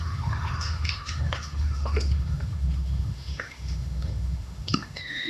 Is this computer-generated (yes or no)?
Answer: yes